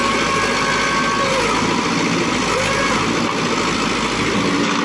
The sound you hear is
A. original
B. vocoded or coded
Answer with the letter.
A